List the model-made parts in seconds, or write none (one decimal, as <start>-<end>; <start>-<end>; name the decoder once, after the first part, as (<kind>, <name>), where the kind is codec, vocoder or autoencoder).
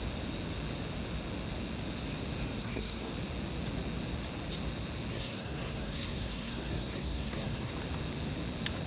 2.6-3.1 (codec, SNAC); 5.1-7.7